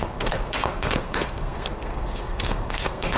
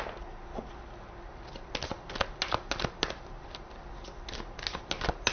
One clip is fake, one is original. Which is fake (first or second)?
first